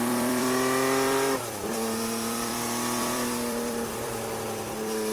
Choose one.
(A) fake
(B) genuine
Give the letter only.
A